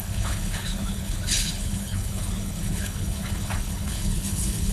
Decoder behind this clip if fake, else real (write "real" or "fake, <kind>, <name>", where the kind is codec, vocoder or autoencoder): fake, codec, HILCodec